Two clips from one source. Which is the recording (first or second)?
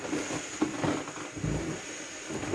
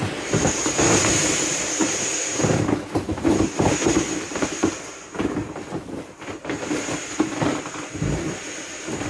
first